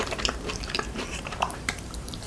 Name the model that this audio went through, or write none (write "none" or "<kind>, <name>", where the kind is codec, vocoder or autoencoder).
vocoder, BigVGAN v2